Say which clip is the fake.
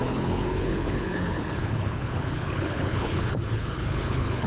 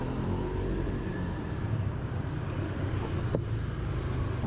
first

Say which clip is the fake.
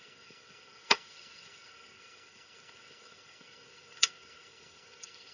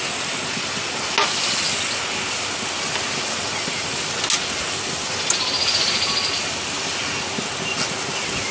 first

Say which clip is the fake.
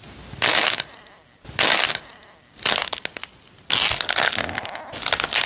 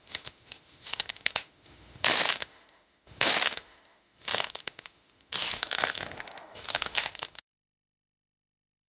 second